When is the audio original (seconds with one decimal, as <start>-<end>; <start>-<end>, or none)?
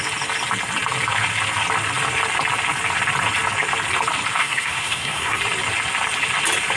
0.0-4.4; 5.4-6.8